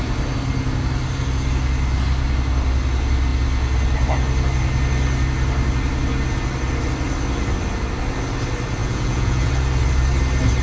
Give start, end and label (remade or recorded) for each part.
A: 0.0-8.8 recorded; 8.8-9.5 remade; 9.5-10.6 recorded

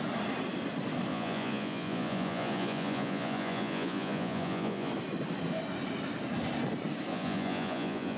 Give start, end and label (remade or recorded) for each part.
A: 0.0-1.1 recorded; 1.1-4.9 remade; 4.9-7.1 recorded; 7.1-8.2 remade

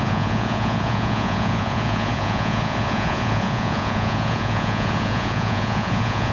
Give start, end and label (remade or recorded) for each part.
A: 0.0-6.3 remade

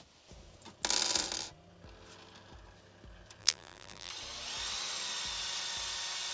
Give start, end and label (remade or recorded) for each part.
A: 0.0-3.4 recorded; 3.4-4.1 remade; 4.1-6.3 recorded

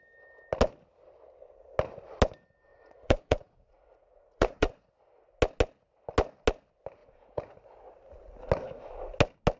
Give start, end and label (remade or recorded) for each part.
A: 0.0-2.7 recorded; 2.7-4.9 remade; 4.9-7.0 recorded; 7.0-7.9 remade; 7.9-9.6 recorded

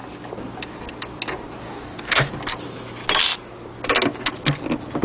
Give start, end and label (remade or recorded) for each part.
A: 0.0-1.6 recorded; 1.6-2.3 remade; 2.3-5.0 recorded

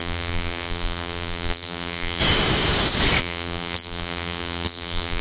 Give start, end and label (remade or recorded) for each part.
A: 0.0-2.2 remade; 2.2-3.2 recorded; 3.2-5.2 remade